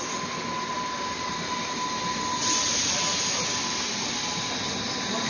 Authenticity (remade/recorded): recorded